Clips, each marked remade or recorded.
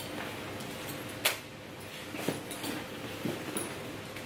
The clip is recorded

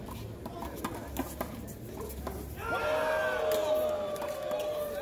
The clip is recorded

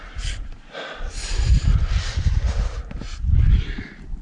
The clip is remade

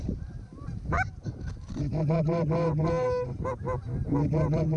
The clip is remade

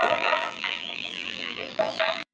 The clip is remade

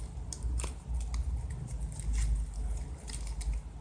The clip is recorded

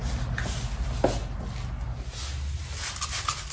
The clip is recorded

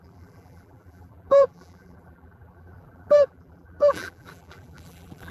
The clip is remade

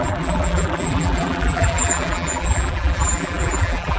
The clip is remade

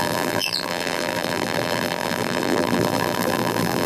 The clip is remade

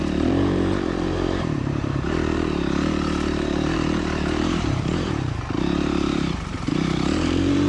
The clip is remade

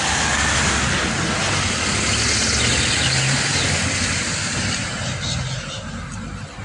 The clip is recorded